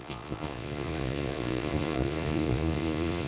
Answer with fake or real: fake